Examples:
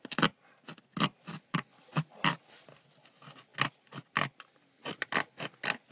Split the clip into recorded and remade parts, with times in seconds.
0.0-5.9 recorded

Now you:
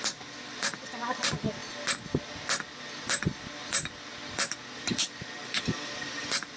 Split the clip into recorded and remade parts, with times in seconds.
0.0-1.6 remade; 1.6-3.0 recorded; 3.0-4.1 remade; 4.1-4.8 recorded; 4.8-6.6 remade

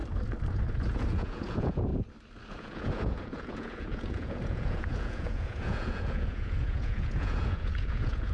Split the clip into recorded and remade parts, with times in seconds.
0.0-0.7 recorded; 0.7-1.9 remade; 1.9-2.5 recorded; 2.5-8.3 remade

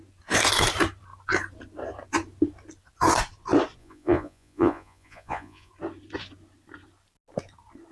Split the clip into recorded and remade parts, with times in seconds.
0.0-3.8 recorded; 3.8-5.7 remade; 5.7-7.9 recorded

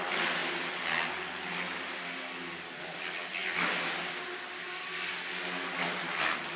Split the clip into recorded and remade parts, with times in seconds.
0.0-3.4 recorded; 3.4-4.0 remade; 4.0-6.6 recorded

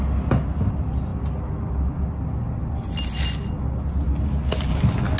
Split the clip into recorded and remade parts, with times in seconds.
0.0-5.2 recorded

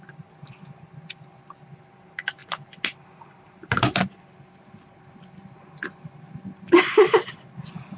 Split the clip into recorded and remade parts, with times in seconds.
0.0-8.0 recorded

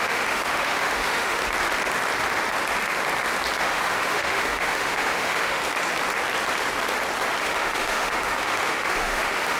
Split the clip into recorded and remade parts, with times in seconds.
0.0-1.4 remade; 1.4-3.6 recorded; 3.6-5.6 remade; 5.6-7.4 recorded; 7.4-9.6 remade